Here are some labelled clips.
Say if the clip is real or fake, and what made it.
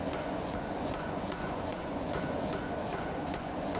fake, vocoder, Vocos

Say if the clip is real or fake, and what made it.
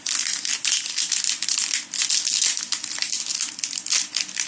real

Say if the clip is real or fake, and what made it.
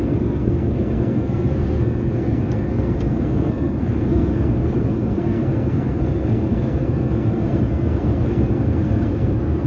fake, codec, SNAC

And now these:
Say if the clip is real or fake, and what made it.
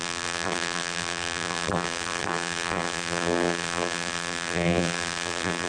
fake, vocoder, BigVGAN v2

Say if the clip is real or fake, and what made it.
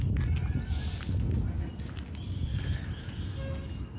real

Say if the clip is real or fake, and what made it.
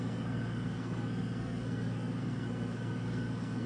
fake, codec, SNAC